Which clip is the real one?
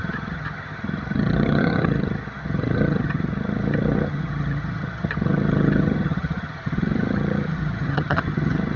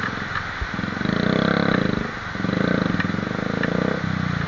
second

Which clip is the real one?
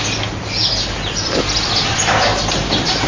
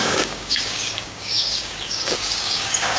first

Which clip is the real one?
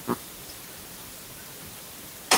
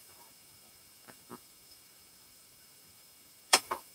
first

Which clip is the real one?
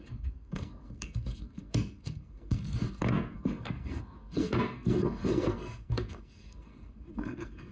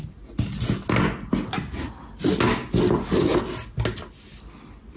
second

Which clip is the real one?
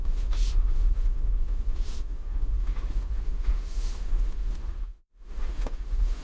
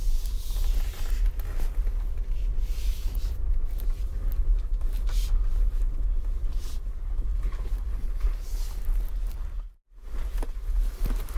second